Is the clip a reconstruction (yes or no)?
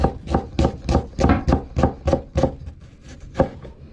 no